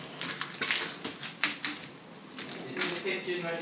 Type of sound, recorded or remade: recorded